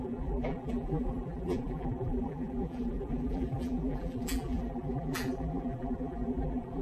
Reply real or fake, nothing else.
fake